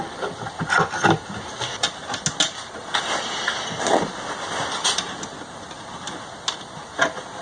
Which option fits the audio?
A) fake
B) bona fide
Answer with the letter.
B